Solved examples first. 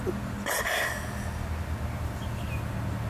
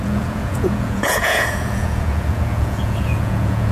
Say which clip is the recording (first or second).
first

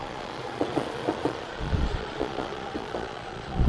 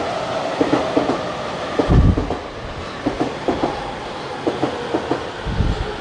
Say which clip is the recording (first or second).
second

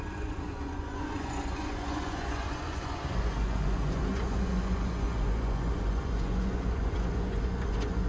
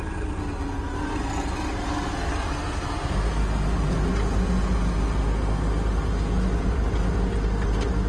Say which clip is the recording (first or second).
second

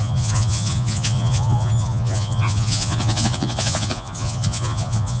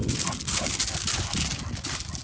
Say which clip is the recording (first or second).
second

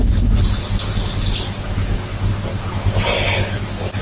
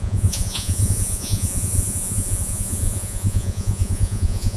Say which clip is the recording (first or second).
first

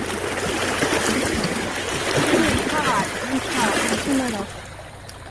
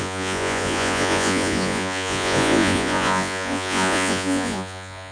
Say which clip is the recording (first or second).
first